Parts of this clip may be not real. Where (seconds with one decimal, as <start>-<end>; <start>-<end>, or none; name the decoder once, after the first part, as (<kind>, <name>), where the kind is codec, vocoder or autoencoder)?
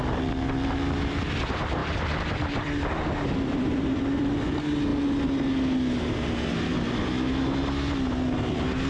1.8-4.0 (vocoder, BigVGAN v2)